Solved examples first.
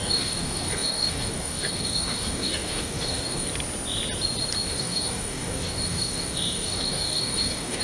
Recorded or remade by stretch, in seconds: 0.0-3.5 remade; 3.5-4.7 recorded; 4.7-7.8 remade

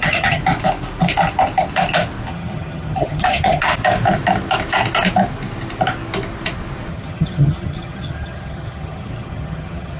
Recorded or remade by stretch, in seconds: 0.0-0.4 remade; 0.4-2.3 recorded; 2.3-3.7 remade; 3.7-6.9 recorded; 6.9-10.0 remade

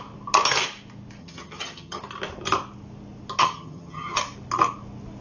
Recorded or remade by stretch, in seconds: 0.0-1.2 recorded; 1.2-2.0 remade; 2.0-3.4 recorded; 3.4-4.2 remade; 4.2-5.2 recorded

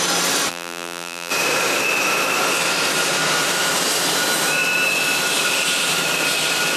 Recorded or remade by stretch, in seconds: 0.0-0.5 recorded; 0.5-1.3 remade; 1.3-6.8 recorded

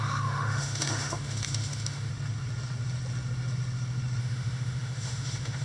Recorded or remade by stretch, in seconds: 0.0-2.1 remade; 2.1-4.2 recorded; 4.2-5.6 remade

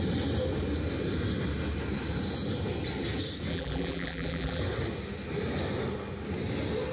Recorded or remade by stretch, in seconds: 0.0-3.5 recorded; 3.5-4.6 remade; 4.6-6.9 recorded

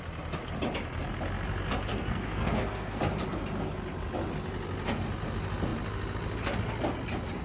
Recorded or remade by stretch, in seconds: 0.0-1.9 recorded; 1.9-3.0 remade; 3.0-7.4 recorded

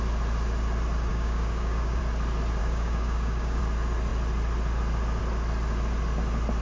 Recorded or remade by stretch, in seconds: 0.0-1.1 recorded; 1.1-2.0 remade; 2.0-2.6 recorded; 2.6-3.6 remade; 3.6-6.6 recorded